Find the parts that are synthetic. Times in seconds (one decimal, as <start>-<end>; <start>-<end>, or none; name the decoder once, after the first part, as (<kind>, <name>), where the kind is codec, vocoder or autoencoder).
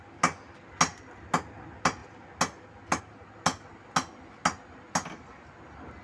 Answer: none